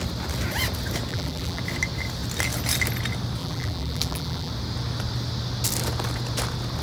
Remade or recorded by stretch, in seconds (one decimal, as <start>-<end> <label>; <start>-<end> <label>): 0.0-1.1 recorded; 1.1-1.6 remade; 1.6-3.4 recorded; 3.4-4.5 remade; 4.5-6.8 recorded